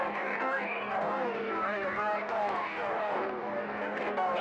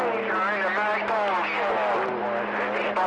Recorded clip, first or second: second